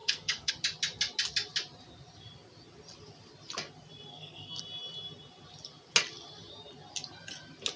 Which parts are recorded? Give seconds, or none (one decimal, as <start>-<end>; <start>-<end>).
0.5-4.1; 4.6-7.8